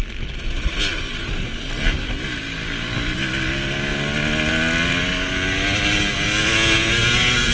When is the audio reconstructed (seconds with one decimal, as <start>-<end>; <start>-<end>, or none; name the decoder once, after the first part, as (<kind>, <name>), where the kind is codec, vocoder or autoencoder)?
none